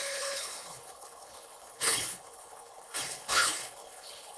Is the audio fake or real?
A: fake